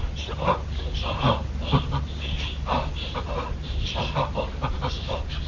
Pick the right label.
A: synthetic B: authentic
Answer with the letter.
B